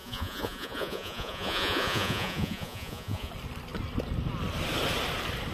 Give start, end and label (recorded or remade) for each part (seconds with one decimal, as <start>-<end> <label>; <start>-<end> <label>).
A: 0.0-3.3 remade; 3.3-5.5 recorded